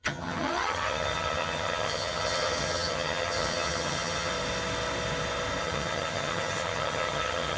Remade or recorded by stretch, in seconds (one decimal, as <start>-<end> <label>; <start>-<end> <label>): 0.0-4.3 remade; 4.3-5.6 recorded; 5.6-7.6 remade